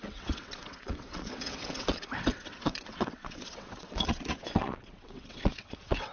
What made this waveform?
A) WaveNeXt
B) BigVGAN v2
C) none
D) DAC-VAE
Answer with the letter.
A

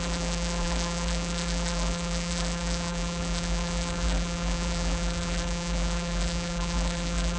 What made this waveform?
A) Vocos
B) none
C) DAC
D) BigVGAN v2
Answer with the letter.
D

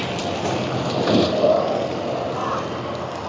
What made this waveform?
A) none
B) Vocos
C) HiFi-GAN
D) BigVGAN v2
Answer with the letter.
A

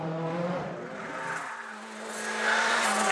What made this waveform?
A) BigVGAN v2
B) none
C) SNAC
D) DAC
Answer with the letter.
B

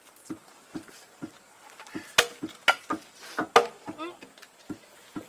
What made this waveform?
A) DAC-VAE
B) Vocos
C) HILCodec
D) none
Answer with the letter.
D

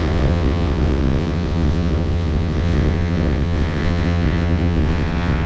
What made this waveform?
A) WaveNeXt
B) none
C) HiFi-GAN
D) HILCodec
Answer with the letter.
A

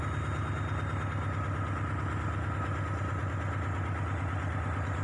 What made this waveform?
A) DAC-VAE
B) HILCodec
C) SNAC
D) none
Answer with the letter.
D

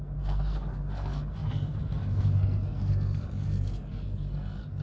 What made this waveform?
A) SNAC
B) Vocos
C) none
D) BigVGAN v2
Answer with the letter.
A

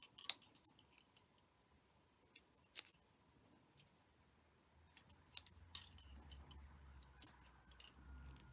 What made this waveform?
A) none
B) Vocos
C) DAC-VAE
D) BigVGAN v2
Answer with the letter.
A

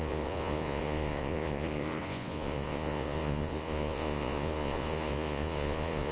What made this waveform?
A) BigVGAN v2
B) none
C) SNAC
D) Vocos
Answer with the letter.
D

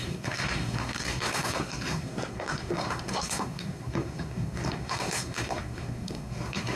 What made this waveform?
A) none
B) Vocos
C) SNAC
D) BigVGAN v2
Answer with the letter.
C